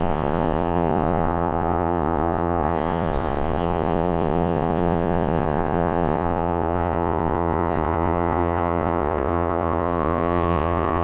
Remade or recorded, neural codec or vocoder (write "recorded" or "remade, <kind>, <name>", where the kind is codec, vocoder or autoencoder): remade, vocoder, Vocos